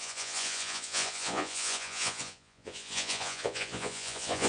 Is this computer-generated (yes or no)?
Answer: yes